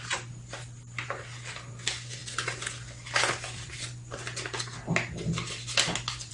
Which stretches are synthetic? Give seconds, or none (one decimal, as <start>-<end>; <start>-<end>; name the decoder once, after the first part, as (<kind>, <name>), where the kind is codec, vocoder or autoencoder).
none